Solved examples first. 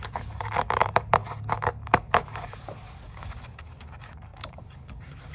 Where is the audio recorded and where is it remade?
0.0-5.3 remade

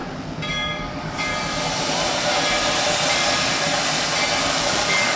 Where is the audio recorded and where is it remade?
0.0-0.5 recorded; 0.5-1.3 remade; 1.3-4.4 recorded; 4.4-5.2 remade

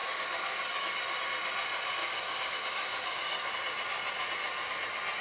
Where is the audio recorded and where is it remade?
0.0-1.0 remade; 1.0-2.0 recorded; 2.0-3.5 remade; 3.5-5.2 recorded

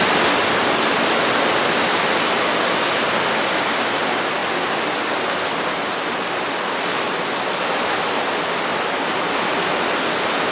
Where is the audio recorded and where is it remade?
0.0-10.5 recorded